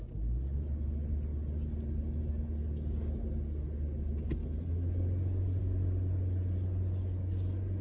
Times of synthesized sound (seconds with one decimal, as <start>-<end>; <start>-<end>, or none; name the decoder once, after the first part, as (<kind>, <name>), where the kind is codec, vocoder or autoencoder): none